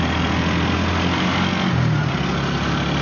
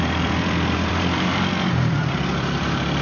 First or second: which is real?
first